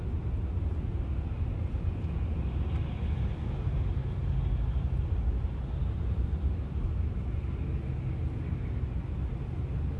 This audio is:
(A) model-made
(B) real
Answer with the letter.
B